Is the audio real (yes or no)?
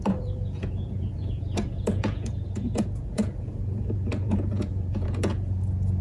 no